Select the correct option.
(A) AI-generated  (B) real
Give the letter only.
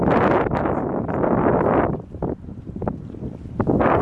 B